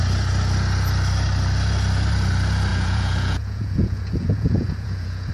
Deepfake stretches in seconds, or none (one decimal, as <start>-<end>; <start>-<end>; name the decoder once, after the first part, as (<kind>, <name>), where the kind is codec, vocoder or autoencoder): 2.7-5.3 (vocoder, Vocos)